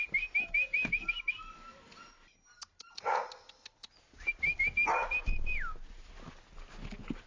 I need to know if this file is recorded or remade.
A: recorded